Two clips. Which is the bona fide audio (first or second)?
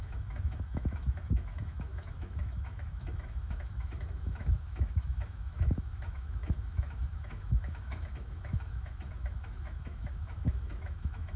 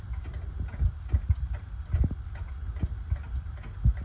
second